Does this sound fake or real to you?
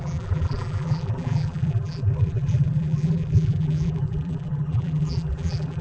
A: fake